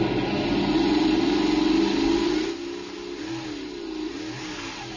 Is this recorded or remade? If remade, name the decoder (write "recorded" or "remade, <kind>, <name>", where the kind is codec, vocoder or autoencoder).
recorded